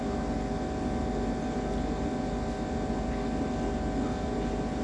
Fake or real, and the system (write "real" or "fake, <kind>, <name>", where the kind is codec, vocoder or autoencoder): real